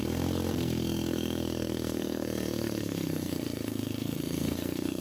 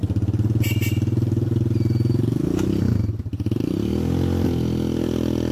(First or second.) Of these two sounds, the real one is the second